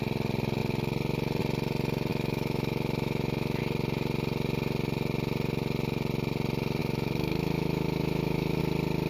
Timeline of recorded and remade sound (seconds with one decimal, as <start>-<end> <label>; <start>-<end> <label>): 0.0-2.1 recorded; 2.1-3.6 remade; 3.6-6.8 recorded; 6.8-8.6 remade; 8.6-9.1 recorded